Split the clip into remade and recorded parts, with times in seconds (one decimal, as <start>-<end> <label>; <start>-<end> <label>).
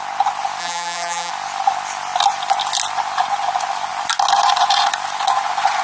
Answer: 0.0-0.6 recorded; 0.6-1.3 remade; 1.3-5.8 recorded